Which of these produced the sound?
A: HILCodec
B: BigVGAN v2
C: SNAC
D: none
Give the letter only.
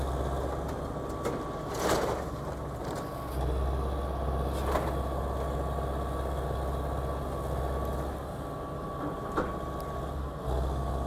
D